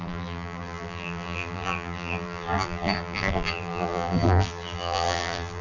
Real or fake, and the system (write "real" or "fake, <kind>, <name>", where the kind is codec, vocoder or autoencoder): fake, vocoder, BigVGAN v2